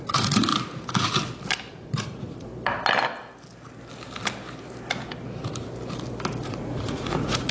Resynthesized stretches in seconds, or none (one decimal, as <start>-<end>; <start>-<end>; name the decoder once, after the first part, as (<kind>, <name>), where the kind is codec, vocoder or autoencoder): 0.0-0.5 (vocoder, Vocos); 1.7-2.5; 6.4-7.5